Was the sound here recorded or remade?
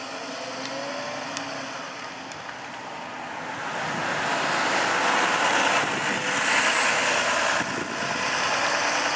recorded